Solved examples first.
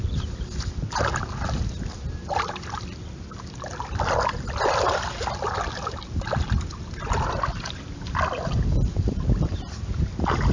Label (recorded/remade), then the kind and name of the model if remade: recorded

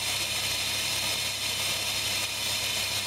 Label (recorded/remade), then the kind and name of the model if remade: recorded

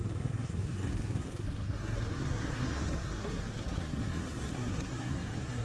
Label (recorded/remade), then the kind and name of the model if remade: remade, codec, SNAC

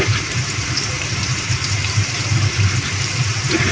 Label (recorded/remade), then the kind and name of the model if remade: remade, vocoder, BigVGAN v2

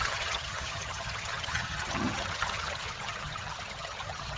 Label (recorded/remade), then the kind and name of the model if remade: remade, vocoder, HiFi-GAN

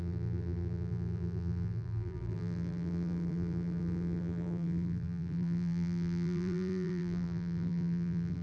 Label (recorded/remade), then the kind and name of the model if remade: remade, vocoder, BigVGAN v2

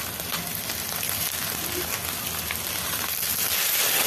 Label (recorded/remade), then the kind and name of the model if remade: recorded